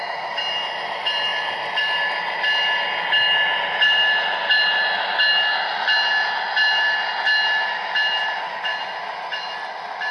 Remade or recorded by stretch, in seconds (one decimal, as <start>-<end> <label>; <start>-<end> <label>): 0.0-10.1 recorded